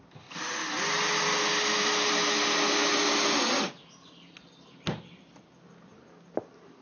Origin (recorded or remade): recorded